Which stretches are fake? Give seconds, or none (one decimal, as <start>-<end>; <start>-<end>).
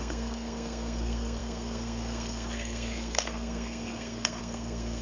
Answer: 0.0-5.0